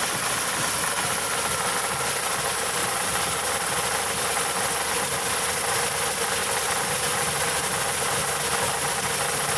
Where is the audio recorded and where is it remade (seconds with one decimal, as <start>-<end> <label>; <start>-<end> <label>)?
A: 0.0-9.6 recorded